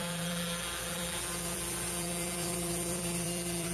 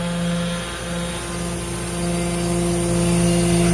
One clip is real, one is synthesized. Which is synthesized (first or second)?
first